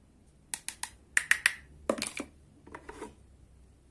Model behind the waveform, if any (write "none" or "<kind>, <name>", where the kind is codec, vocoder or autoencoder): none